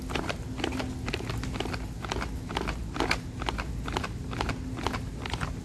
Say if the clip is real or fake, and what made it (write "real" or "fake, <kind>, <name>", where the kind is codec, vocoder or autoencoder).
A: real